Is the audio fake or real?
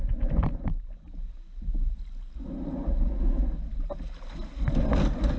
real